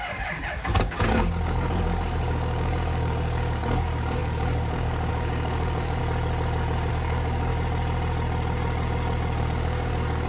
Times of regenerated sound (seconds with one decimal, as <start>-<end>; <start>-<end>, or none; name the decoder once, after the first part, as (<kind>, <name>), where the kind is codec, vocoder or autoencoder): 0.0-6.0 (codec, DAC); 6.9-7.5; 9.4-10.3

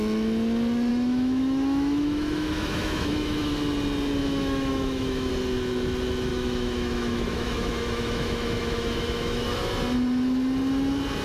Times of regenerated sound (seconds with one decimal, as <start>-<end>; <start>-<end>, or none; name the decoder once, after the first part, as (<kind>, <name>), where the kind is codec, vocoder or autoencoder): 0.9-3.5 (autoencoder, DAC-VAE); 4.2-5.3; 6.3-9.7

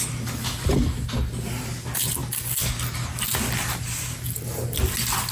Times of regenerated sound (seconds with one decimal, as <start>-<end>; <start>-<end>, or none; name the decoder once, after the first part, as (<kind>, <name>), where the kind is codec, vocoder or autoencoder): none

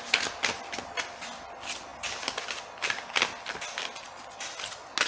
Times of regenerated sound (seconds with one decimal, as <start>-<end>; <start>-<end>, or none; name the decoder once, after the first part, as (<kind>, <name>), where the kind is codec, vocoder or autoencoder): none